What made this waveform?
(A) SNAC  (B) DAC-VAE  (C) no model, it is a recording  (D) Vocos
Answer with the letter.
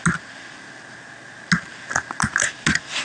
C